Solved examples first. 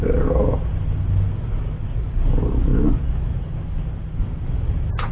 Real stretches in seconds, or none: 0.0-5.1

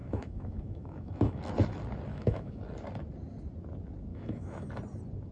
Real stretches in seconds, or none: 1.4-2.1; 2.6-4.1; 4.7-5.3

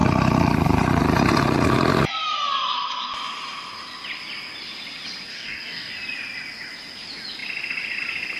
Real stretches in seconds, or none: 0.0-5.3; 5.9-8.4

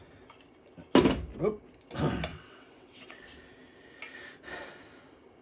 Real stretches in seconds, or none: 0.0-2.3; 3.2-5.4

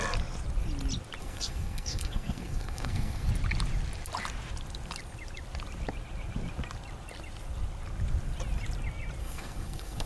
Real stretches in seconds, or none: 0.0-1.2; 3.3-9.2

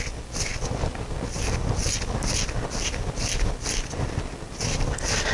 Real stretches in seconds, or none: 0.0-5.3

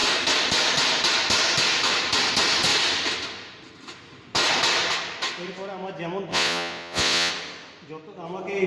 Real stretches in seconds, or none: 0.0-6.3; 7.3-8.7

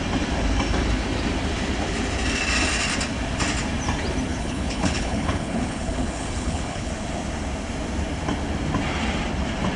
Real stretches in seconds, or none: 0.0-4.3; 6.9-9.8